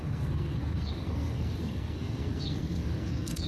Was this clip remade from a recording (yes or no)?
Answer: yes